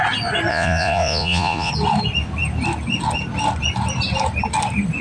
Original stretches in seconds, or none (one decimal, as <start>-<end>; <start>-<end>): 0.0-0.5; 1.7-5.0